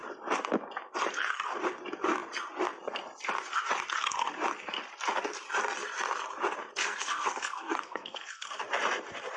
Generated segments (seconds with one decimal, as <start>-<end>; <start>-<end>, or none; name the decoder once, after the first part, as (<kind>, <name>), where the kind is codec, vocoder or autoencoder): 6.8-8.6 (codec, SNAC)